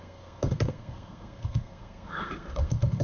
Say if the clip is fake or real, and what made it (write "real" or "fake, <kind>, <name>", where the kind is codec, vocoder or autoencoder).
fake, codec, SNAC